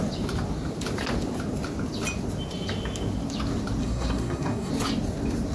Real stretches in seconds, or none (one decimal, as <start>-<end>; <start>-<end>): 0.0-3.8; 4.7-5.5